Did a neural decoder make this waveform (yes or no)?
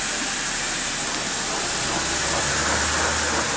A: no